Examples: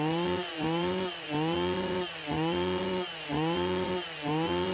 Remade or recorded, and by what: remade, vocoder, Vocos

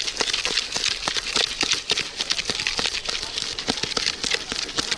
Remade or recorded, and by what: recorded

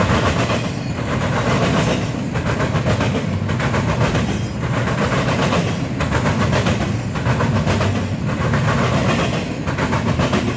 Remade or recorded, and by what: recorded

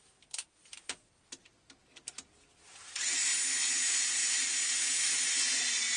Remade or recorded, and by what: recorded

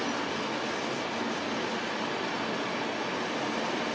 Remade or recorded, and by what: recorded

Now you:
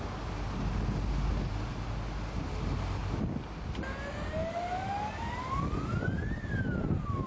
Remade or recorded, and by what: recorded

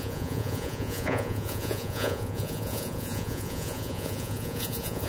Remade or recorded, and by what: remade, vocoder, Vocos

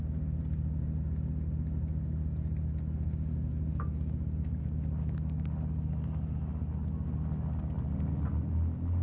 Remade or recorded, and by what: recorded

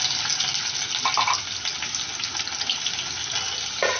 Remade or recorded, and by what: recorded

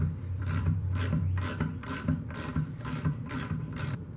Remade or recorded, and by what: remade, vocoder, BigVGAN v2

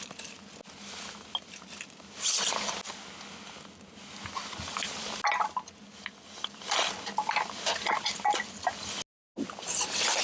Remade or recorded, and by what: recorded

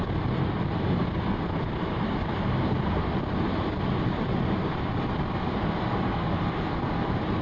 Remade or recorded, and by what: recorded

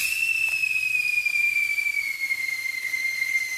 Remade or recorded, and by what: recorded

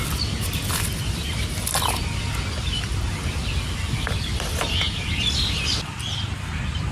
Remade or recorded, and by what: recorded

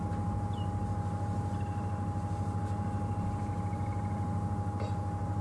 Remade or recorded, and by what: recorded